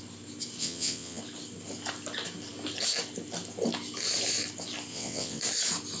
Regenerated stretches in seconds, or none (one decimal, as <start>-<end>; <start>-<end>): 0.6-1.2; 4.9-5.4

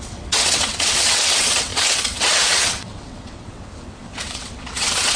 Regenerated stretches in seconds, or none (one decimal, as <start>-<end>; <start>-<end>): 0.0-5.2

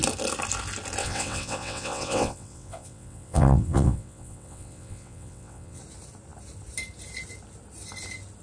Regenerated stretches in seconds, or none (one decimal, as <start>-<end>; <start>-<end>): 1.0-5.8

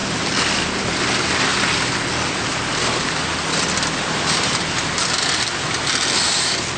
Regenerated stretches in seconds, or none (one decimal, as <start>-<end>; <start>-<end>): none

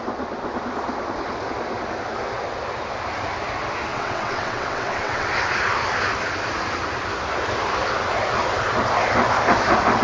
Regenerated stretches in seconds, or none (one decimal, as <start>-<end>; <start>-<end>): 3.9-5.3

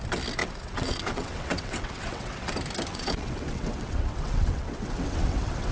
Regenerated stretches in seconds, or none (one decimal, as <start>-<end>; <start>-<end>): 0.4-2.5; 2.9-5.7

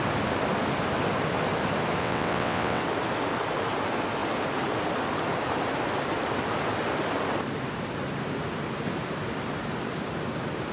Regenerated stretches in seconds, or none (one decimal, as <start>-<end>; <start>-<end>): 2.0-2.8

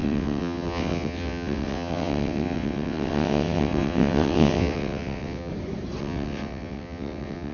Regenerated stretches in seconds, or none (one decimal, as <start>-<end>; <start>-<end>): 0.0-5.5; 6.0-7.5